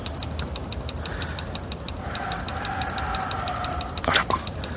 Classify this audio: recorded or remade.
recorded